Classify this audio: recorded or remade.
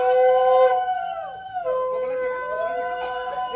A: recorded